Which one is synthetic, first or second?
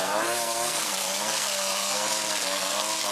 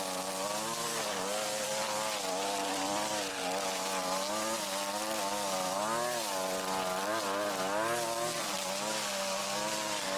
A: first